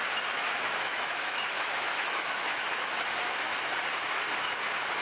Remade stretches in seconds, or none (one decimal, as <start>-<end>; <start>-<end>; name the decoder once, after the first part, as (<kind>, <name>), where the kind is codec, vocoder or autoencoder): 0.6-3.5 (autoencoder, DAC-VAE)